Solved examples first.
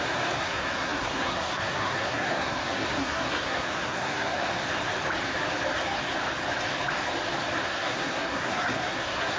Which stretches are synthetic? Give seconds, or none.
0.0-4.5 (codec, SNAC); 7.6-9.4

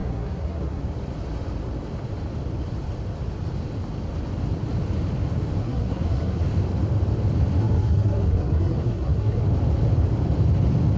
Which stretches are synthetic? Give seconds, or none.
0.0-0.8 (codec, SNAC); 5.6-6.4; 7.6-9.4

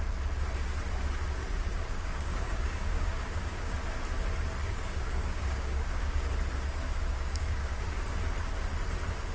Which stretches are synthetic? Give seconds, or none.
1.7-3.8 (codec, DAC); 4.6-6.3; 7.0-7.8

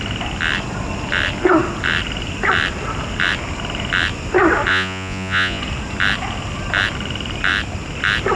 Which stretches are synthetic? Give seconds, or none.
4.7-5.6 (vocoder, Vocos)

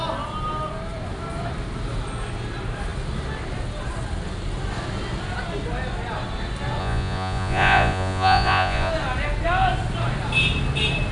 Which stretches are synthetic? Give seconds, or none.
6.8-8.9 (vocoder, Vocos)